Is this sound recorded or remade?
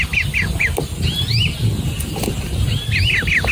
recorded